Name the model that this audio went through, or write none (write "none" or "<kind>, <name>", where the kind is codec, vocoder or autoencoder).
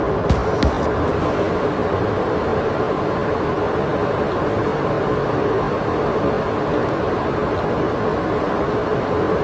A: none